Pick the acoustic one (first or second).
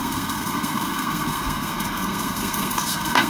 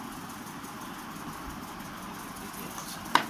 second